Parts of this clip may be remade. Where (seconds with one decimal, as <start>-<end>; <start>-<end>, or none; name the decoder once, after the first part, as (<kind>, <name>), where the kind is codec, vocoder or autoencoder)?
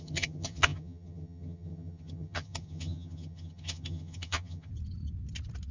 0.0-4.7 (vocoder, HiFi-GAN)